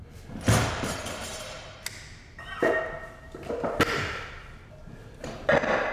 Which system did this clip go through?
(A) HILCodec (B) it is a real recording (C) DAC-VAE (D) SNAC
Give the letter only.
B